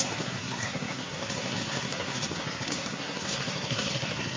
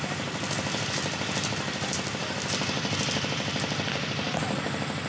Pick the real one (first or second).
second